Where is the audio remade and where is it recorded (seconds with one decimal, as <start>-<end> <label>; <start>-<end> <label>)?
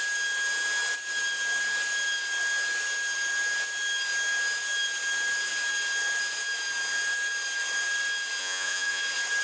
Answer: 0.0-8.4 recorded; 8.4-9.0 remade; 9.0-9.4 recorded